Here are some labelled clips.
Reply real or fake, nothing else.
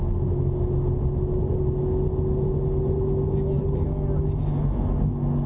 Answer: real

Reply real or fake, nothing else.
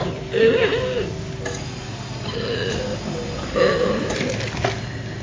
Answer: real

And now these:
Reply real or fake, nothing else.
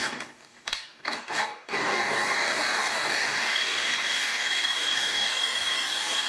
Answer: fake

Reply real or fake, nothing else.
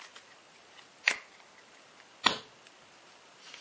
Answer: real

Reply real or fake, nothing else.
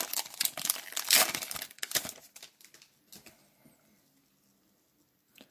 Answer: real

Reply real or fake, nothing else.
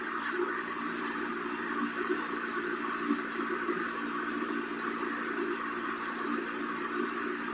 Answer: real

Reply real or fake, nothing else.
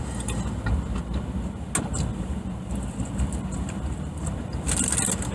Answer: real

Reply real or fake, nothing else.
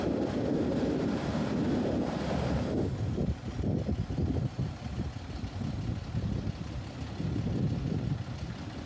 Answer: real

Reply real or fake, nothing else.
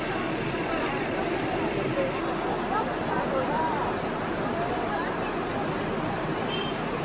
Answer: fake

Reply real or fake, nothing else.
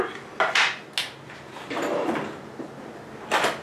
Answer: real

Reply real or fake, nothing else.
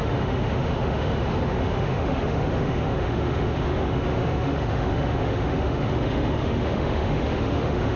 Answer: fake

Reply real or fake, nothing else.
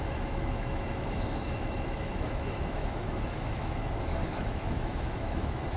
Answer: fake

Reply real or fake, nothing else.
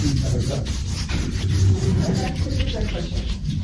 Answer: fake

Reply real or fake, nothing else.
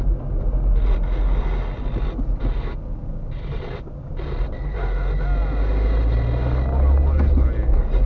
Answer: real